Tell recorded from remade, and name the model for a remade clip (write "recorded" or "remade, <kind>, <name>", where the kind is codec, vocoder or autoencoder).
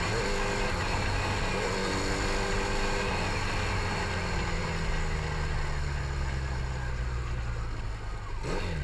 recorded